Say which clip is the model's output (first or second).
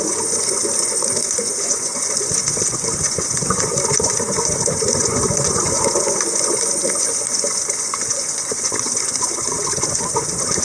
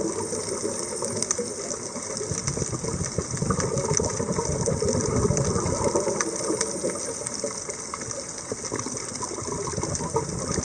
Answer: first